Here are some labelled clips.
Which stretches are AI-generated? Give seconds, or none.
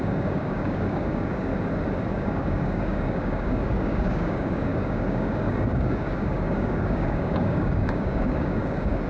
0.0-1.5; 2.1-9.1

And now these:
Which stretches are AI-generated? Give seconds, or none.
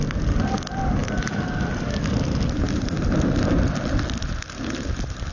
none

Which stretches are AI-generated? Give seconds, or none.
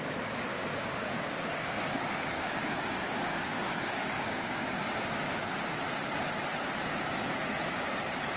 0.5-5.4